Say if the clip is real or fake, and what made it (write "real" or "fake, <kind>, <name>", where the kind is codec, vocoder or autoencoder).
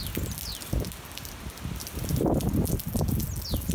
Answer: real